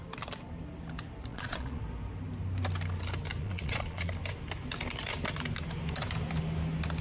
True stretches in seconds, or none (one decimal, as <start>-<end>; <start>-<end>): 0.0-1.3; 1.8-3.4; 4.1-7.0